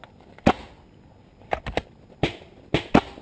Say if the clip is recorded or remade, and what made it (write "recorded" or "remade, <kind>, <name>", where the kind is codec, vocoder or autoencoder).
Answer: recorded